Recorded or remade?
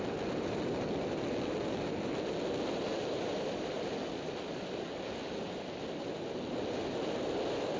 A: recorded